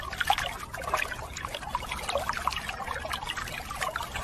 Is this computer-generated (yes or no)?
no